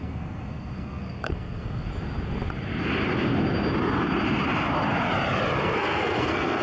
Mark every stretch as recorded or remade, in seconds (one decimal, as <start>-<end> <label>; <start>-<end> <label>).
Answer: 0.0-1.9 remade; 1.9-5.6 recorded; 5.6-6.6 remade